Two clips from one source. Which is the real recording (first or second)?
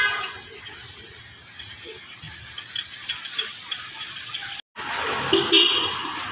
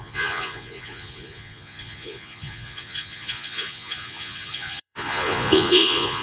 first